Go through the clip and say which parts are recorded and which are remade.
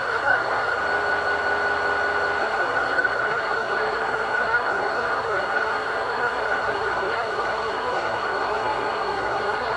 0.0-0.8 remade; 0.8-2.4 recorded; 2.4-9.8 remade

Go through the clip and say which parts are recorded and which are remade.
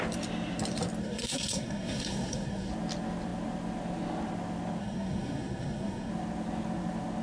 0.0-1.0 recorded; 1.0-2.7 remade; 2.7-4.8 recorded; 4.8-6.1 remade; 6.1-7.2 recorded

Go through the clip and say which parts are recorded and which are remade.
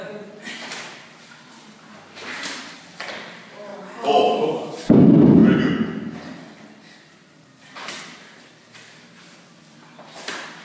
0.0-10.6 recorded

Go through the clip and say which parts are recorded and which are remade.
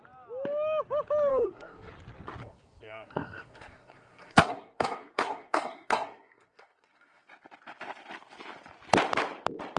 0.0-1.3 recorded; 1.3-1.9 remade; 1.9-2.4 recorded; 2.4-7.3 remade; 7.3-9.8 recorded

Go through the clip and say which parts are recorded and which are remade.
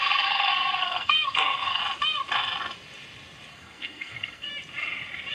0.0-1.8 remade; 1.8-3.5 recorded; 3.5-4.5 remade; 4.5-5.3 recorded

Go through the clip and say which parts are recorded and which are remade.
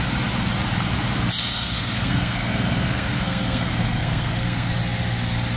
0.0-1.4 recorded; 1.4-4.7 remade; 4.7-5.6 recorded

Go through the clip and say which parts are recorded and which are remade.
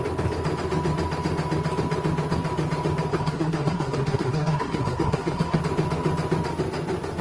0.0-3.1 recorded; 3.1-5.6 remade; 5.6-7.2 recorded